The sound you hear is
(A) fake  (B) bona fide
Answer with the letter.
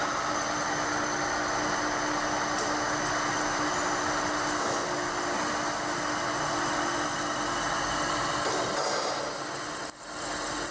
B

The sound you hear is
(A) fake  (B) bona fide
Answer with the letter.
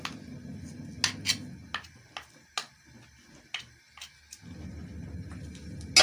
B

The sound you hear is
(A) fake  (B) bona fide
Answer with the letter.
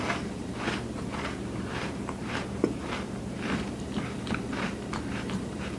A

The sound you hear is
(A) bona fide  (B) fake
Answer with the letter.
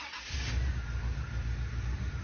A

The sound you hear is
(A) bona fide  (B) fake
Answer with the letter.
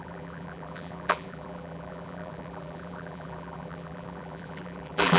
B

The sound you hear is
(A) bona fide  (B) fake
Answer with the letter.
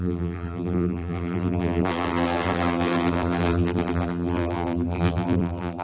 B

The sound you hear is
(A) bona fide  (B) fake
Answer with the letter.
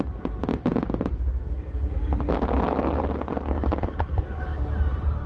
A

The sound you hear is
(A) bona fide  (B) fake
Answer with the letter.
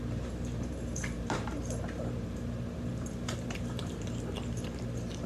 B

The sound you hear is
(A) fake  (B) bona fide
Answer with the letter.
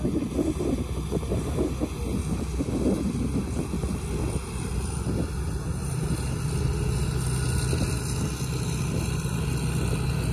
B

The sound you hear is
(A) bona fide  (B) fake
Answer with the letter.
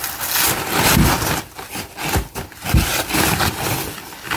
A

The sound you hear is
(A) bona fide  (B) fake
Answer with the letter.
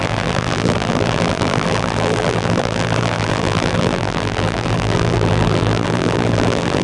B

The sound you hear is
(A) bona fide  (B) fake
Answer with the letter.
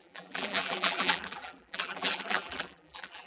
B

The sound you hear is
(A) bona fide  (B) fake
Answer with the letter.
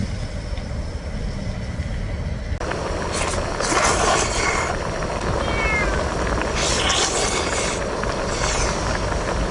A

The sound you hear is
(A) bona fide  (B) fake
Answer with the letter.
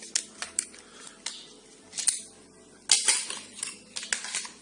A